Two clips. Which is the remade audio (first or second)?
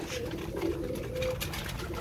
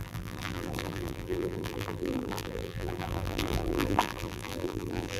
second